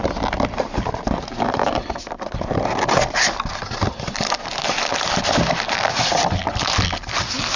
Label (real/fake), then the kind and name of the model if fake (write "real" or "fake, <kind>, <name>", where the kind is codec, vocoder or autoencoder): real